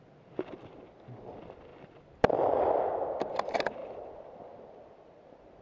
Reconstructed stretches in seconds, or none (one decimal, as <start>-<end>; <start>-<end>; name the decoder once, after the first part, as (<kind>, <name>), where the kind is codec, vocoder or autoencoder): none